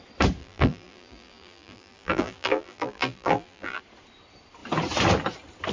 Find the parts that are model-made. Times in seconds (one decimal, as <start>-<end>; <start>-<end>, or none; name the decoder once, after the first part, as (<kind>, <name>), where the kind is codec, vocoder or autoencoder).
0.4-3.8 (vocoder, BigVGAN v2)